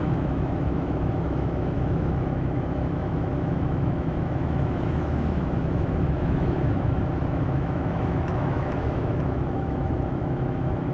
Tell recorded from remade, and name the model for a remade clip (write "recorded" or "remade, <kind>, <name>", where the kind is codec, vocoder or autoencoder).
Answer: remade, autoencoder, DAC-VAE